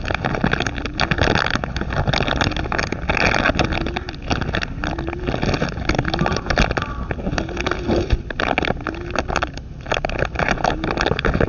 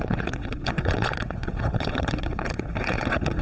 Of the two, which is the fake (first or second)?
second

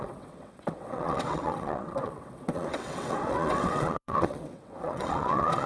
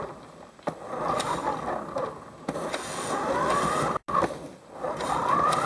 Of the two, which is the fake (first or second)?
first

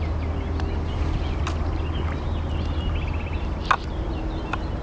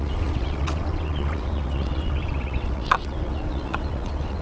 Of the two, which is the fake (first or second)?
second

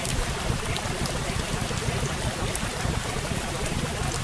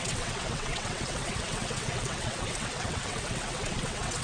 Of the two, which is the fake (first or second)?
second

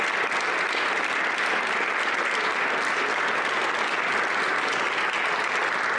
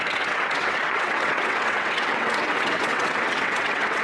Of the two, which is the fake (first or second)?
second